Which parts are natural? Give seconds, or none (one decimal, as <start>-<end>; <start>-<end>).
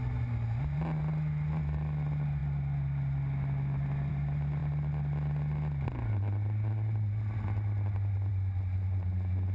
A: 0.0-9.5